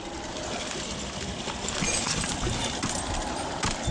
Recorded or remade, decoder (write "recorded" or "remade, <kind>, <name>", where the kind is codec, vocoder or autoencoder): recorded